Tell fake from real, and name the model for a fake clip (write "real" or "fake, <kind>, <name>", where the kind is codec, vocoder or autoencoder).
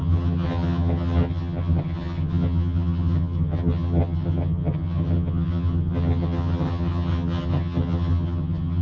fake, vocoder, HiFi-GAN